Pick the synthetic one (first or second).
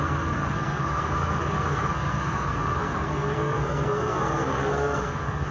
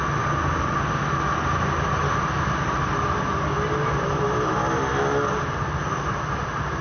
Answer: first